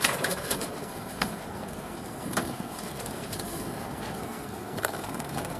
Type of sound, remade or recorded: remade